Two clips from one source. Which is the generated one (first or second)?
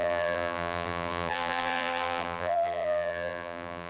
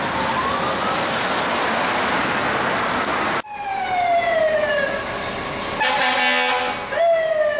first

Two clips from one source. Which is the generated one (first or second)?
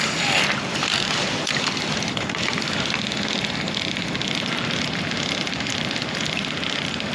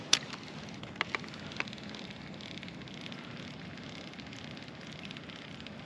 first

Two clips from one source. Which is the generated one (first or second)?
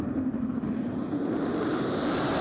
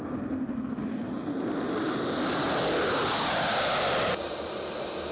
first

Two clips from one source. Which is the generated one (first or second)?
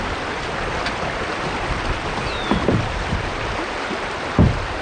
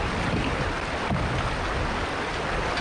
first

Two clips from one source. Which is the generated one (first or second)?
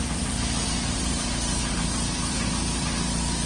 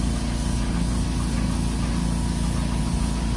first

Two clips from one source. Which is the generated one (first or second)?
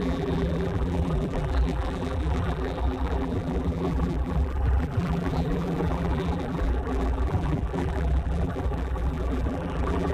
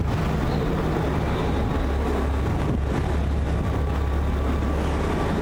first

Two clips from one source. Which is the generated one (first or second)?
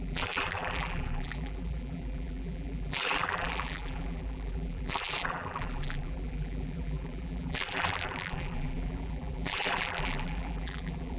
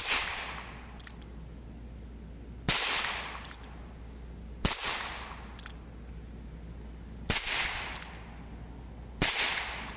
first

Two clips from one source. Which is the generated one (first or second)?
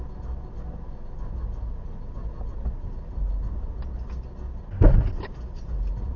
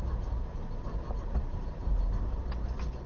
second